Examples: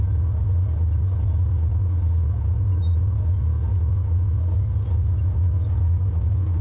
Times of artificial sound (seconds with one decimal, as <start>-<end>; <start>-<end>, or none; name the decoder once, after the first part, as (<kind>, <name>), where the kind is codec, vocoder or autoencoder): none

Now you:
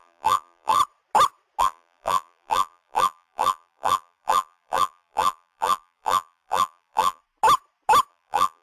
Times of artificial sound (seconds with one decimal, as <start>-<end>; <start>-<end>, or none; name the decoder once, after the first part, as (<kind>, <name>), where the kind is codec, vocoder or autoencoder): 0.0-0.8 (vocoder, BigVGAN v2); 1.6-7.2; 8.1-8.6

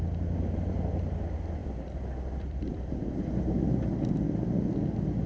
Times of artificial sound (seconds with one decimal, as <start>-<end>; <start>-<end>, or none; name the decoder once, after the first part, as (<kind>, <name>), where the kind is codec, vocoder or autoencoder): 1.6-3.5 (vocoder, BigVGAN v2)